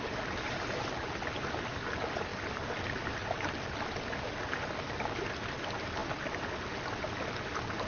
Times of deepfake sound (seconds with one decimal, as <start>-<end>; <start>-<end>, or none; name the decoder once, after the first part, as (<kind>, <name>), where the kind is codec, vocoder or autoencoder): none